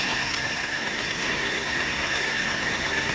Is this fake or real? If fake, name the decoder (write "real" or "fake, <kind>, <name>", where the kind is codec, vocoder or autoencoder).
fake, codec, SNAC